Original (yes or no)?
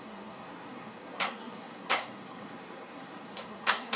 no